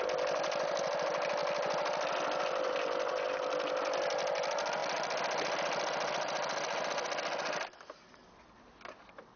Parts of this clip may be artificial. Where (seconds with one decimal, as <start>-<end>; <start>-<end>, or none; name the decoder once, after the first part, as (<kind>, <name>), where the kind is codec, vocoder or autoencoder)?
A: none